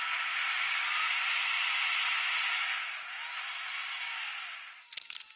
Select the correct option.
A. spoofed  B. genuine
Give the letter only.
B